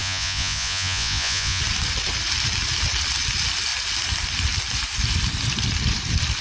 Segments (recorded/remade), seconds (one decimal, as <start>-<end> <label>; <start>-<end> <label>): 0.0-1.6 remade; 1.6-6.4 recorded